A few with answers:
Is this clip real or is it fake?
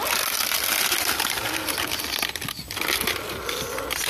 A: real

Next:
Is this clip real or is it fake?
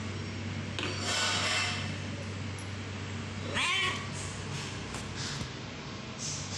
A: real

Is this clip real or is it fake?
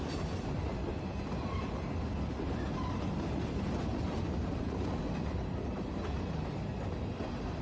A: real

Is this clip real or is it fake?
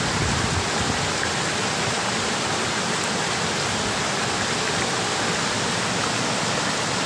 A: real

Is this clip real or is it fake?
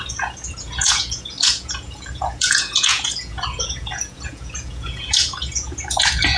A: fake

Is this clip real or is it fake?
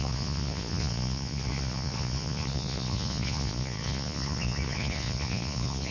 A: fake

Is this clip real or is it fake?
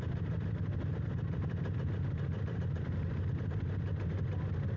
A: real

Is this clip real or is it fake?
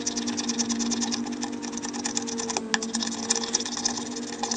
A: real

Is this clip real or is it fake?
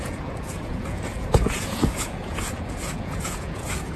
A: fake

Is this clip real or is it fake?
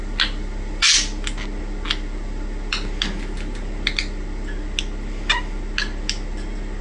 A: real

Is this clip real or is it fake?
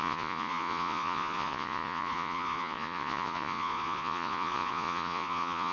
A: fake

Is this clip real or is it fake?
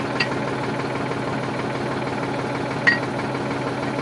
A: real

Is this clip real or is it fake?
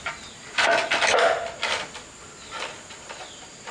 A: real